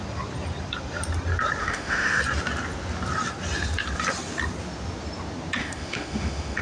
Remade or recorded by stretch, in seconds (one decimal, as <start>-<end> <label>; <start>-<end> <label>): 0.0-1.6 recorded; 1.6-2.2 remade; 2.2-5.6 recorded; 5.6-6.6 remade

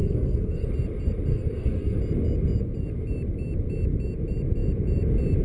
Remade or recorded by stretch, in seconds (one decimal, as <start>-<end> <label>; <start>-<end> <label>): 0.0-0.7 remade; 0.7-1.3 recorded; 1.3-2.0 remade; 2.0-5.4 recorded

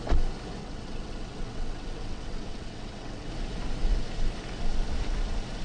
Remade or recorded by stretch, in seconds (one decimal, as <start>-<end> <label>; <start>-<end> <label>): 0.0-0.6 recorded; 0.6-3.3 remade; 3.3-5.6 recorded

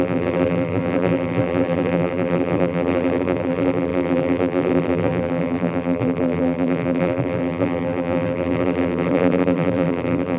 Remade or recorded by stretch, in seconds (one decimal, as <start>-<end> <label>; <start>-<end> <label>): 0.0-10.4 remade

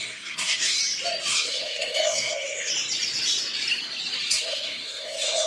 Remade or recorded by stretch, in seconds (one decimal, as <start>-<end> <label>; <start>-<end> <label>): 0.0-0.8 remade; 0.8-1.3 recorded; 1.3-2.7 remade; 2.7-4.3 recorded; 4.3-5.5 remade

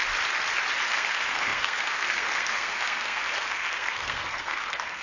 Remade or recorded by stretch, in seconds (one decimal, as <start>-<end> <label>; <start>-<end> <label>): 0.0-0.9 recorded; 0.9-5.0 remade

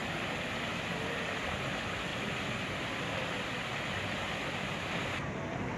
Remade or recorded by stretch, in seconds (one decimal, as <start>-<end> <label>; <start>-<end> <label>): 0.0-2.1 recorded; 2.1-5.3 remade; 5.3-5.8 recorded

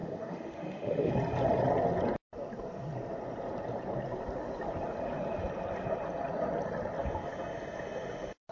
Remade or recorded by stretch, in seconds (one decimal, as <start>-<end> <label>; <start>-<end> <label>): 0.0-1.1 remade; 1.1-8.5 recorded